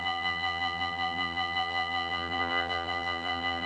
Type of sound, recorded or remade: remade